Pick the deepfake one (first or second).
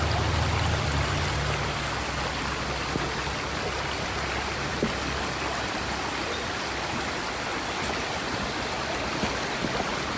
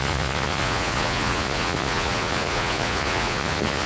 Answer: second